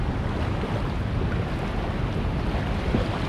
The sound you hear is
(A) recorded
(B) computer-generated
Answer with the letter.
A